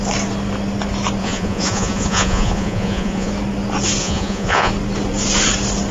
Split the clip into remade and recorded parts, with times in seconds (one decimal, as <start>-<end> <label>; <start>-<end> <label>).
0.0-1.2 recorded; 1.2-3.3 remade; 3.3-4.0 recorded; 4.0-4.7 remade; 4.7-5.9 recorded